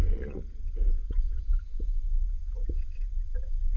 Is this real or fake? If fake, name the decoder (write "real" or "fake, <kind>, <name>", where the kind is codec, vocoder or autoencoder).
fake, vocoder, Vocos